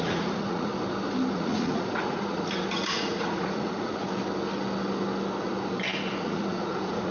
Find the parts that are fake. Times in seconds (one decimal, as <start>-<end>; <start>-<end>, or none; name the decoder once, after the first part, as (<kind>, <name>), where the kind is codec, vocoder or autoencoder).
0.0-0.7 (vocoder, Vocos); 1.3-4.0; 6.2-7.1